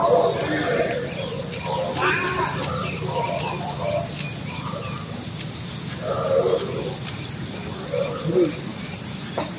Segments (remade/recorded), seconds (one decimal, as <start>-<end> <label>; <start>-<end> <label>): 0.0-9.6 recorded